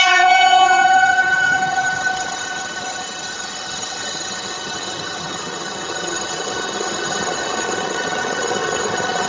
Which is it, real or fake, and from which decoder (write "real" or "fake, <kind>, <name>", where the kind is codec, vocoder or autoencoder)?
fake, vocoder, HiFi-GAN